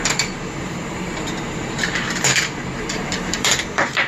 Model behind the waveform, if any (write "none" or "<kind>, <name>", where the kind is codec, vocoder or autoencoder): vocoder, BigVGAN v2